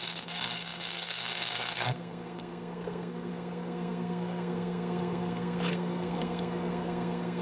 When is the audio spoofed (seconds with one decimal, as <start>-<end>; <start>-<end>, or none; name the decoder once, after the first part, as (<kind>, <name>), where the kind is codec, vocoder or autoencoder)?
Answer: 0.0-7.4 (codec, SNAC)